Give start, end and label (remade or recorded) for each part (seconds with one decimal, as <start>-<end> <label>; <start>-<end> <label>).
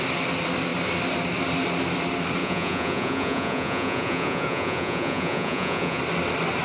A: 0.0-2.4 recorded; 2.4-6.0 remade; 6.0-6.6 recorded